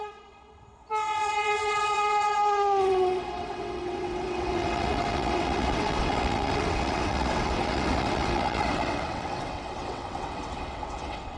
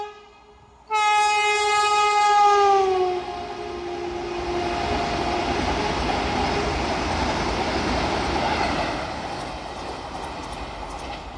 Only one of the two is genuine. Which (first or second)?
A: second